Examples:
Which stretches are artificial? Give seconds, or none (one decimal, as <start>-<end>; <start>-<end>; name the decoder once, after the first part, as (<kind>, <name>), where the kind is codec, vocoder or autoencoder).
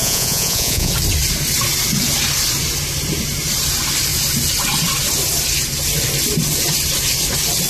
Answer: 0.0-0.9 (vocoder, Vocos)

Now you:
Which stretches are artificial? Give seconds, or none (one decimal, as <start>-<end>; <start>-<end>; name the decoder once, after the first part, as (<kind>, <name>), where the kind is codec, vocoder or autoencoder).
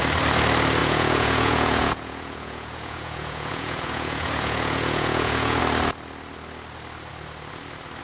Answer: 0.8-5.6 (vocoder, Vocos)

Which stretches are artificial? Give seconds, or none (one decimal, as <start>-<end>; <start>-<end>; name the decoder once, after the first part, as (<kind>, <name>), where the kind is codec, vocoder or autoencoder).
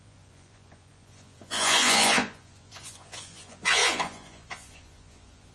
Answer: 0.0-5.5 (vocoder, Vocos)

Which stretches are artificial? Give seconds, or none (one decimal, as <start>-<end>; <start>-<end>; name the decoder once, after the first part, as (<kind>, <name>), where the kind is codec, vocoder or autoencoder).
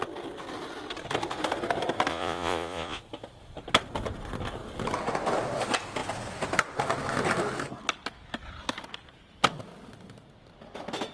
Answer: 2.1-3.0 (vocoder, Vocos)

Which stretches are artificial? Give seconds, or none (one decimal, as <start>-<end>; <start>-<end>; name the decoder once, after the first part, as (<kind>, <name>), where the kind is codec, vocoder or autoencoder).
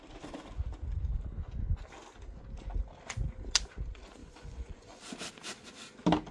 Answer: 4.2-5.0 (vocoder, Vocos)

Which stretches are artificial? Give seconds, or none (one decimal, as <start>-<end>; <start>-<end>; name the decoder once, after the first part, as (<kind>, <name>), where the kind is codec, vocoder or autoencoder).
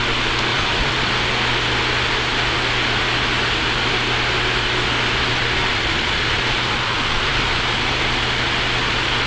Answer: 0.5-1.1 (vocoder, Vocos); 5.3-7.3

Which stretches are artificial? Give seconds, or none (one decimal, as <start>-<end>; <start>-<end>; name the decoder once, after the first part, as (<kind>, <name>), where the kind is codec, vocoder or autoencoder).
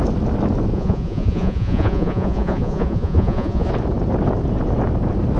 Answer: 0.7-3.7 (vocoder, Vocos)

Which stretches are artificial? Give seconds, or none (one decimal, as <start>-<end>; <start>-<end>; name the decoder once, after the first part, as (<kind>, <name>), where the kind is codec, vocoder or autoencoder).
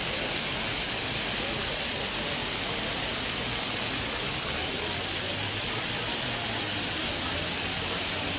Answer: none